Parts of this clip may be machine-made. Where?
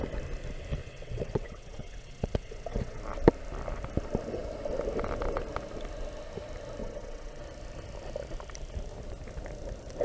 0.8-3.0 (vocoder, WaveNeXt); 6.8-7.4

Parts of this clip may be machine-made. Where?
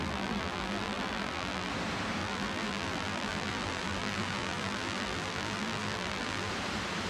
0.0-1.7 (vocoder, BigVGAN v2); 2.2-6.5